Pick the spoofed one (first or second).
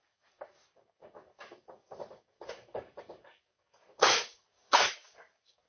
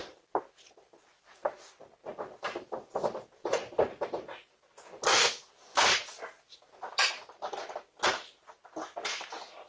first